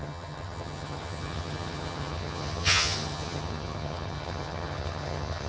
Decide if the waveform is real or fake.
fake